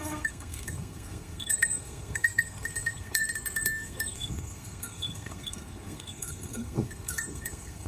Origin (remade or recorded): remade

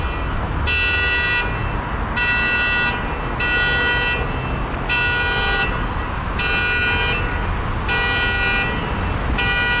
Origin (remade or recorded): recorded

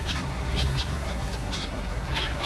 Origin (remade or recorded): remade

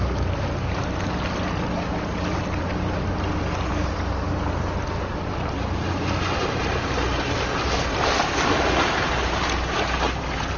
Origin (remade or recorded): recorded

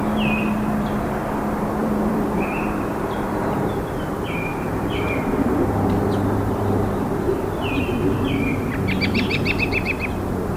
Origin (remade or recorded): remade